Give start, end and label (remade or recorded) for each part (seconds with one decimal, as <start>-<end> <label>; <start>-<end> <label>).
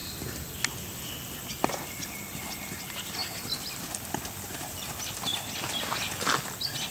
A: 0.0-6.9 recorded